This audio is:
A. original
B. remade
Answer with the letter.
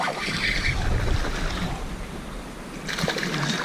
B